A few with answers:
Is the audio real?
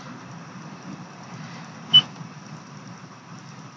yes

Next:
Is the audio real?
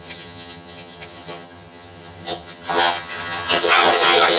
no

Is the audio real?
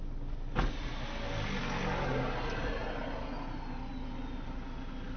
yes